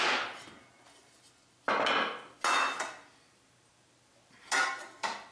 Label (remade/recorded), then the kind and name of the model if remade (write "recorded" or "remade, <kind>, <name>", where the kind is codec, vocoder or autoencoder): recorded